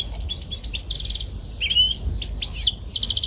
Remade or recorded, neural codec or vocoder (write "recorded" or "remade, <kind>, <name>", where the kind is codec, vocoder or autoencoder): recorded